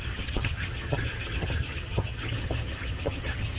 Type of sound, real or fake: fake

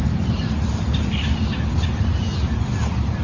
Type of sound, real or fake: real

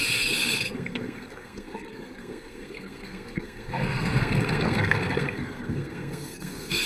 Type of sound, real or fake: fake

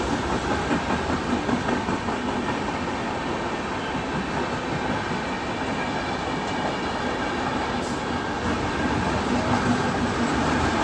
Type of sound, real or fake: real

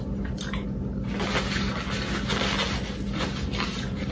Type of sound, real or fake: real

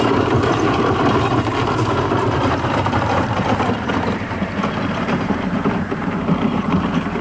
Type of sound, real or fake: fake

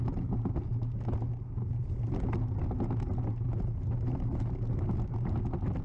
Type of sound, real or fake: real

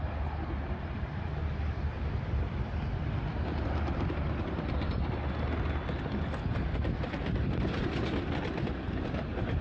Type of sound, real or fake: real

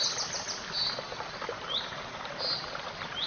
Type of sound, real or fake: real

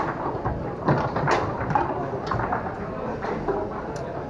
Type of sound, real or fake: real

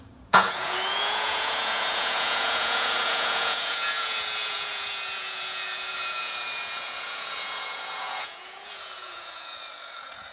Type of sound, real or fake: fake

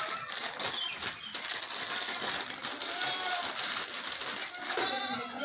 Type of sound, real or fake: real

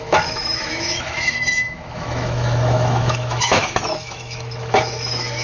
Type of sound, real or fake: fake